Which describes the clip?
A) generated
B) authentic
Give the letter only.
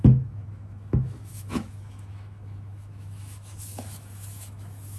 A